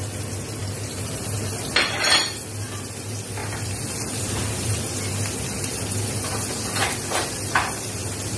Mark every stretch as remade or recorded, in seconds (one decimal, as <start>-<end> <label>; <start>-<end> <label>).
0.0-0.6 recorded; 0.6-1.7 remade; 1.7-3.4 recorded; 3.4-5.0 remade; 5.0-8.4 recorded